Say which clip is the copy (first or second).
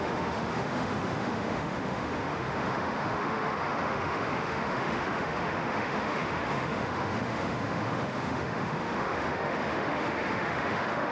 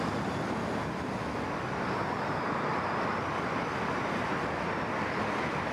first